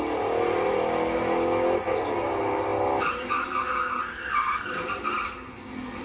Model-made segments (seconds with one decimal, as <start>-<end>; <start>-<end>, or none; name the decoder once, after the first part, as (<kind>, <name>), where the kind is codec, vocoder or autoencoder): none